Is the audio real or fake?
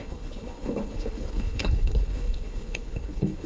fake